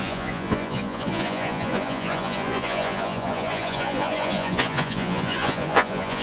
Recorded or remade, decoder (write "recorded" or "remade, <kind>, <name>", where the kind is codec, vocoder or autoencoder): remade, vocoder, Vocos